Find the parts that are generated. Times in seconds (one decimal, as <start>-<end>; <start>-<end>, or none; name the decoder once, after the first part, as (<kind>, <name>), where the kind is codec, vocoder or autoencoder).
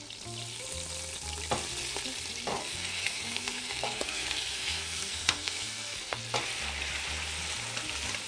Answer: 2.5-6.2 (codec, SNAC)